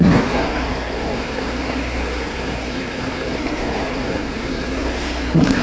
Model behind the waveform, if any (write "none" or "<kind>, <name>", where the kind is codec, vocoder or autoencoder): codec, SNAC